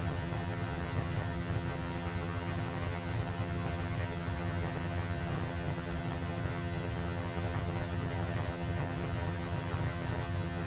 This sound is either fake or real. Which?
fake